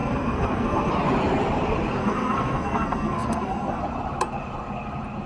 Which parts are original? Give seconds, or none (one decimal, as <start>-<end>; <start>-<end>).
0.9-2.0; 3.8-5.3